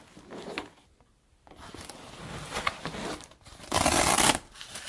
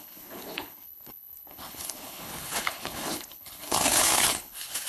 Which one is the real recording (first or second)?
first